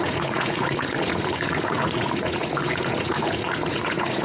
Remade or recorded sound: remade